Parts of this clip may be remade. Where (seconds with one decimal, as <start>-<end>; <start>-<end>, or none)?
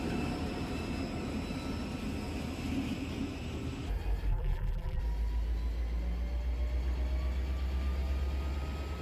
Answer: 4.3-5.0